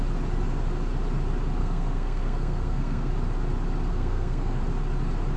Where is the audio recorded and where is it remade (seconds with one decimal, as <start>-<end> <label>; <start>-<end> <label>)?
0.0-1.6 recorded; 1.6-3.1 remade; 3.1-3.9 recorded; 3.9-4.6 remade; 4.6-5.4 recorded

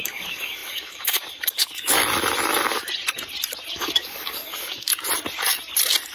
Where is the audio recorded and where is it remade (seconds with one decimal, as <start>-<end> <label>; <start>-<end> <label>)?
0.0-2.0 remade; 2.0-3.7 recorded; 3.7-4.9 remade; 4.9-6.1 recorded

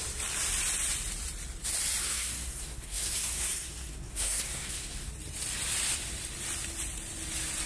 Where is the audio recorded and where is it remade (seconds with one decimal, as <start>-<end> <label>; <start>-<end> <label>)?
0.0-2.0 recorded; 2.0-5.1 remade; 5.1-7.7 recorded

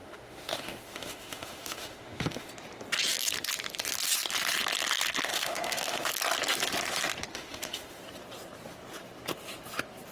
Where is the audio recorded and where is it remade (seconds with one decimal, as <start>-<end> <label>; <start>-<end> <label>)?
0.0-2.5 remade; 2.5-5.3 recorded; 5.3-6.1 remade; 6.1-7.3 recorded; 7.3-8.0 remade; 8.0-10.1 recorded

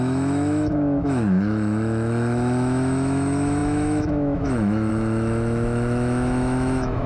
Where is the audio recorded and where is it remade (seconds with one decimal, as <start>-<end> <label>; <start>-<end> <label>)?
0.0-7.1 remade

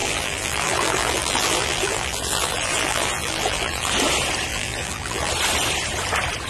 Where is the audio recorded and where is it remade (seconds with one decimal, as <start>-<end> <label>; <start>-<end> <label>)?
0.0-3.9 remade; 3.9-4.5 recorded; 4.5-5.3 remade; 5.3-6.5 recorded